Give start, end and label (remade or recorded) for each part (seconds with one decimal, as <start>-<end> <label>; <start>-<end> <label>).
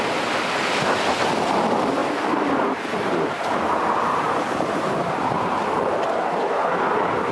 0.0-2.0 recorded; 2.0-6.4 remade; 6.4-7.3 recorded